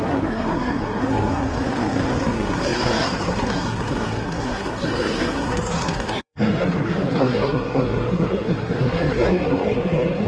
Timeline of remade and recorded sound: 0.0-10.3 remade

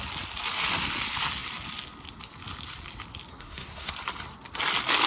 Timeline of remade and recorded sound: 0.0-3.3 recorded; 3.3-3.9 remade; 3.9-5.1 recorded

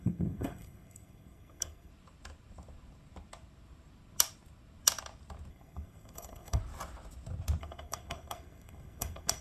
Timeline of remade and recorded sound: 0.0-1.9 remade; 1.9-5.5 recorded; 5.5-6.6 remade; 6.6-7.6 recorded; 7.6-9.4 remade

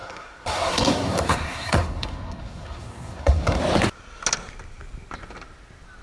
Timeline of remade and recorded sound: 0.0-3.6 remade; 3.6-6.0 recorded

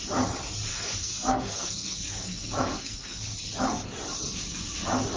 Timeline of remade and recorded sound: 0.0-0.7 recorded; 0.7-3.2 remade; 3.2-5.2 recorded

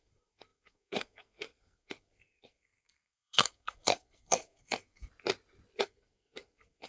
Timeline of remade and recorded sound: 0.0-5.1 remade; 5.1-5.8 recorded; 5.8-6.9 remade

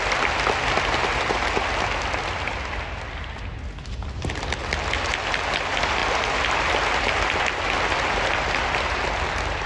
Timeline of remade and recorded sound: 0.0-9.7 recorded

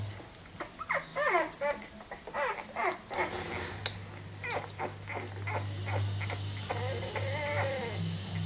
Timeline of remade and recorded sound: 0.0-8.5 recorded